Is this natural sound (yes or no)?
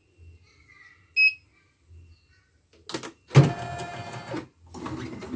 yes